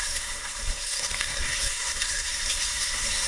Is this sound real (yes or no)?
no